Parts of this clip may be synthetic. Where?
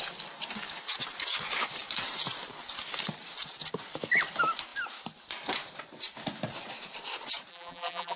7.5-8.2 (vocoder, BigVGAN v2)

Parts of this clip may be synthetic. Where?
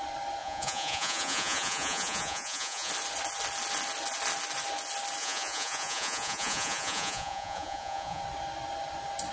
0.4-2.9 (vocoder, Vocos); 5.2-8.2